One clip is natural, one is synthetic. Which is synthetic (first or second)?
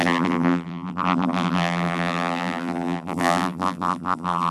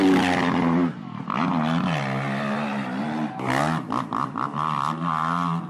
first